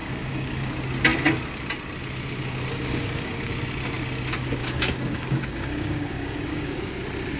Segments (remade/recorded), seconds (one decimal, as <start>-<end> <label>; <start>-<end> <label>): 0.0-0.7 remade; 0.7-2.7 recorded; 2.7-3.5 remade; 3.5-4.6 recorded; 4.6-6.8 remade; 6.8-7.4 recorded